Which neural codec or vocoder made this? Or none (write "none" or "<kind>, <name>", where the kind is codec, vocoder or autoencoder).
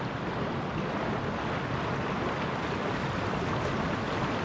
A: none